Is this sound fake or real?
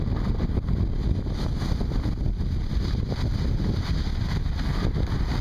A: real